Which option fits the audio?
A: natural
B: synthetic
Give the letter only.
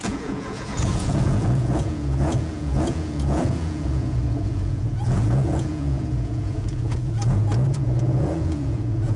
B